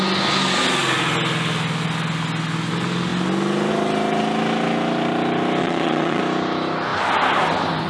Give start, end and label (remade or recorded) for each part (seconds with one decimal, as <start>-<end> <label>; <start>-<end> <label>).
0.0-5.6 recorded; 5.6-6.2 remade; 6.2-7.9 recorded